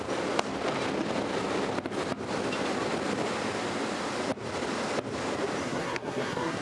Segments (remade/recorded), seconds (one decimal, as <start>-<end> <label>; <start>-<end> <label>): 0.0-5.6 recorded; 5.6-6.6 remade